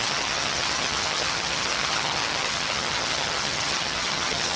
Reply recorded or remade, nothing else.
remade